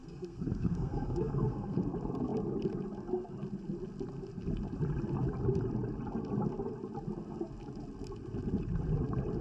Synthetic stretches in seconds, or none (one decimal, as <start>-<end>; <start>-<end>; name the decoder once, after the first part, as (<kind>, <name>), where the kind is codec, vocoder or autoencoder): 0.0-1.8 (codec, SNAC)